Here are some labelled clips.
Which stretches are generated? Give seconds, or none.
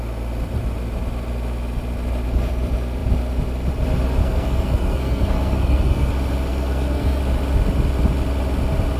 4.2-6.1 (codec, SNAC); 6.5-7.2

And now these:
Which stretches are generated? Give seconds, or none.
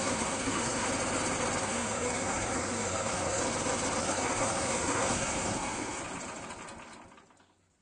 0.0-0.9 (codec, SNAC); 1.6-3.4; 4.0-6.0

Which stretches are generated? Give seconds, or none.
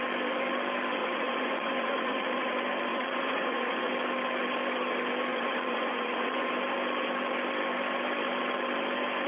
1.0-2.5 (vocoder, Vocos); 2.9-3.9; 5.3-6.5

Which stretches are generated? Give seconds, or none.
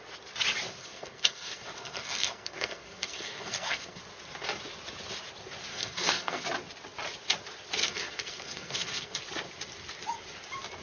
0.8-4.0 (codec, SNAC); 5.7-6.4; 7.8-9.2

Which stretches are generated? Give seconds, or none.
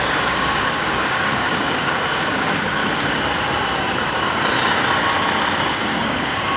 0.0-2.8 (codec, DAC); 5.7-6.6